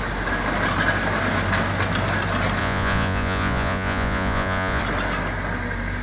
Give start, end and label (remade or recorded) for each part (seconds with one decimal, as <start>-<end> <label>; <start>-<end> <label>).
0.0-2.6 recorded; 2.6-4.8 remade; 4.8-6.0 recorded